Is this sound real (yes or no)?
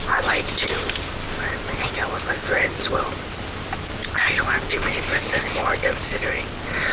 yes